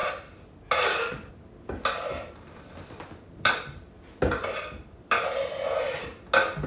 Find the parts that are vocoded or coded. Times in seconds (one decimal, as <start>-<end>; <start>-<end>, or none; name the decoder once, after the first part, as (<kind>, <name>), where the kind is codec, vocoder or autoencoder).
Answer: 2.1-5.8 (vocoder, BigVGAN v2)